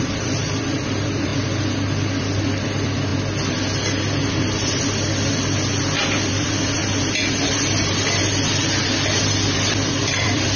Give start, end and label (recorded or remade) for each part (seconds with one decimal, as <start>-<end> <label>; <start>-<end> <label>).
0.0-1.3 remade; 1.3-2.4 recorded; 2.4-3.1 remade; 3.1-6.3 recorded; 6.3-6.8 remade; 6.8-10.0 recorded; 10.0-10.6 remade